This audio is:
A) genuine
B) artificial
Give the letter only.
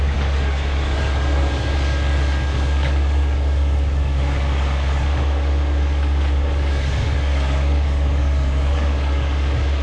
B